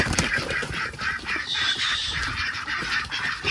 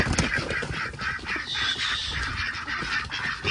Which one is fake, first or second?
first